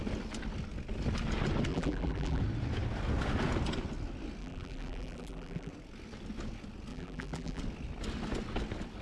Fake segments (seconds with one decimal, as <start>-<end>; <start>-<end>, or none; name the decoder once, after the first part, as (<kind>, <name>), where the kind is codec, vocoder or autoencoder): 1.7-2.4 (vocoder, BigVGAN v2); 4.4-5.7; 6.9-7.6